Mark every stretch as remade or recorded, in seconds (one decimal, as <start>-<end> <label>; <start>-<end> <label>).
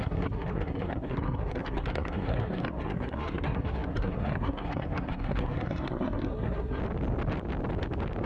0.0-6.8 remade; 6.8-8.3 recorded